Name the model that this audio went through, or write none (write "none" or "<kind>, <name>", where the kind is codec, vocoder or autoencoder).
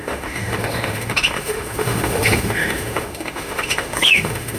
autoencoder, DAC-VAE